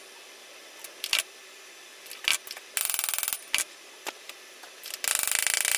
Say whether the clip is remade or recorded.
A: recorded